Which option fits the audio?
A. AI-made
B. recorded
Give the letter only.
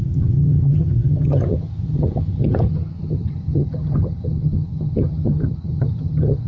A